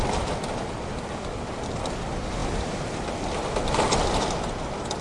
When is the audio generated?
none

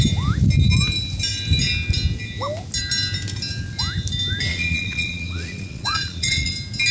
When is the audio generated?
4.5-6.5 (vocoder, Vocos)

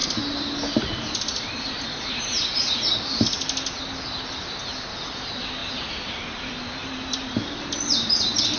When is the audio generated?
none

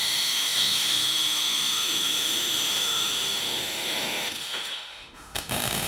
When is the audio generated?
0.0-5.9 (autoencoder, DAC-VAE)

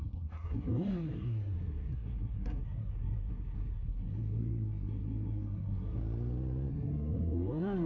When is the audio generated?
0.0-6.0 (codec, SNAC); 6.7-7.9

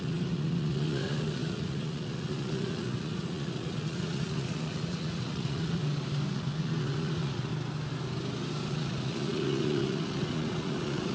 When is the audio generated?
0.0-5.8 (vocoder, Vocos); 6.3-7.5; 8.7-11.1